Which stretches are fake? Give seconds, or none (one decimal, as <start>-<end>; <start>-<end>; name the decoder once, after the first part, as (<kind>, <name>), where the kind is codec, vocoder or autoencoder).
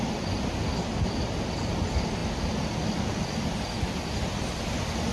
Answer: none